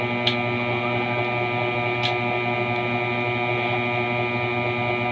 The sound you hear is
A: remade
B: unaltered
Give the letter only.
B